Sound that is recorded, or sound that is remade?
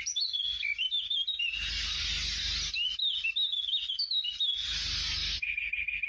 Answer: recorded